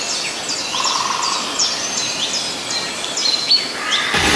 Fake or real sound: real